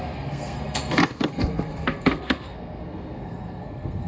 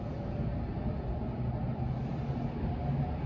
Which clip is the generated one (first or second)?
first